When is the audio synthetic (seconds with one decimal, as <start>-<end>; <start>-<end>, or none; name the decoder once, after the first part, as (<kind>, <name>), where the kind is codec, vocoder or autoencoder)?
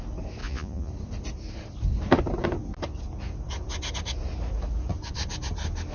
0.4-0.9 (vocoder, Vocos)